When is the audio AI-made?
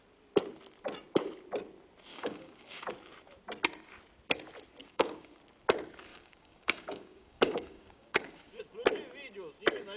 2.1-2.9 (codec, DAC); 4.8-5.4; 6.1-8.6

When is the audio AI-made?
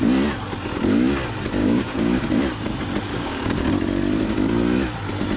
1.6-2.3 (codec, DAC); 3.1-3.7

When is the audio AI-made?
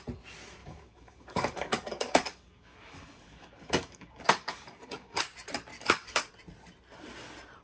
0.6-5.2 (codec, DAC); 5.7-6.3